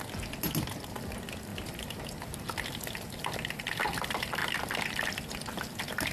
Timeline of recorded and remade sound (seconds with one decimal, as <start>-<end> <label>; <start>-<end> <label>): 0.0-1.5 recorded; 1.5-2.0 remade; 2.0-6.1 recorded